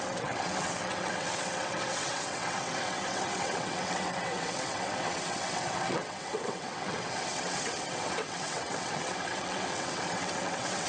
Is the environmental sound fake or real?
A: fake